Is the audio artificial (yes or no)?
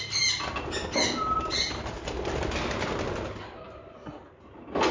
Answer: no